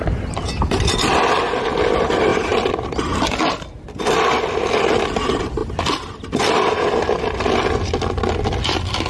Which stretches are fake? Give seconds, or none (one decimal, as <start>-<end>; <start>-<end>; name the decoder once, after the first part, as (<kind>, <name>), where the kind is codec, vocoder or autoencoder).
none